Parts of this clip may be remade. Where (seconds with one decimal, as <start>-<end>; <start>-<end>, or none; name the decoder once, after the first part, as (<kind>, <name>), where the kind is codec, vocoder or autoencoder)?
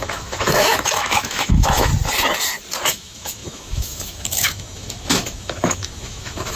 0.0-1.9 (autoencoder, DAC-VAE); 2.9-6.6